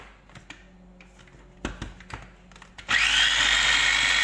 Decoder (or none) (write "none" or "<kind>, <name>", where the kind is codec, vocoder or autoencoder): none